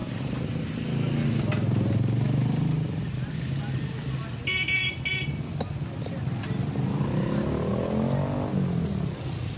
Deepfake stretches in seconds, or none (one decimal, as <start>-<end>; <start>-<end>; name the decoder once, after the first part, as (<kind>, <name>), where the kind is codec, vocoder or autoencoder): none